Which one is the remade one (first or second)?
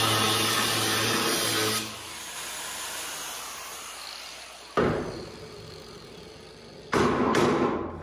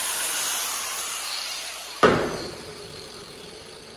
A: second